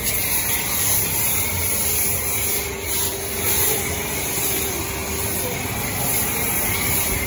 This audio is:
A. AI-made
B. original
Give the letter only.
A